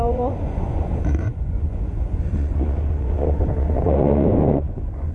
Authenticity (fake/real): fake